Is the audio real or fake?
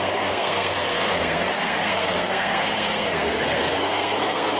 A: fake